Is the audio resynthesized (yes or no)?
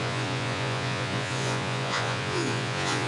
yes